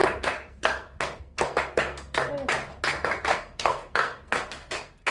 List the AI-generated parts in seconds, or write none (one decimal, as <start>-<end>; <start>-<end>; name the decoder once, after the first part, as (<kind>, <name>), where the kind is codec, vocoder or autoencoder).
0.0-2.3 (codec, SNAC); 2.9-5.1